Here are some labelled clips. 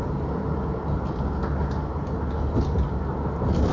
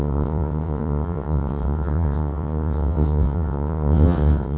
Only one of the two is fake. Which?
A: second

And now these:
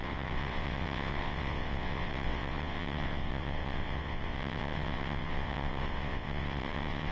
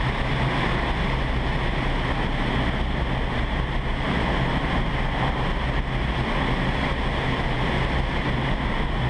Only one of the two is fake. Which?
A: first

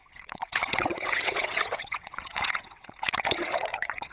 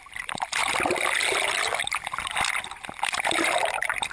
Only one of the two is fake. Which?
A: first